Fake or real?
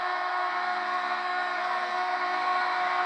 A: fake